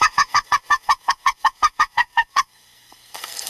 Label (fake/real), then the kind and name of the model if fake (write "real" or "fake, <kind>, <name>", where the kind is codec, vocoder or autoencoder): fake, codec, SNAC